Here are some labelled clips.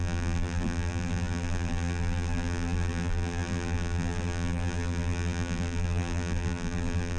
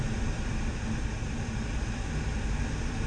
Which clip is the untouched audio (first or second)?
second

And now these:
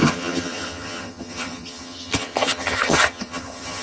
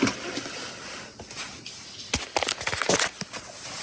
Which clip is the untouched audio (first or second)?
second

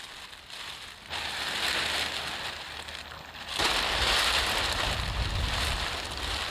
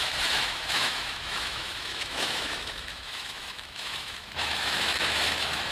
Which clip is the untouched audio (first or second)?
first